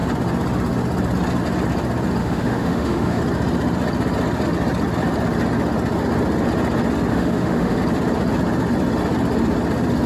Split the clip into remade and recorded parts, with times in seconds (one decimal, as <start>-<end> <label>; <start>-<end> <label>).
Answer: 0.0-2.2 recorded; 2.2-3.2 remade; 3.2-7.1 recorded; 7.1-7.8 remade; 7.8-10.1 recorded